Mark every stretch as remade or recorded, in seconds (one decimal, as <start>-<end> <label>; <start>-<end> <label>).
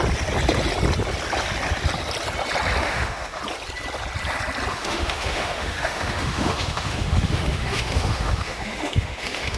0.0-2.8 recorded; 2.8-3.4 remade; 3.4-4.7 recorded; 4.7-9.6 remade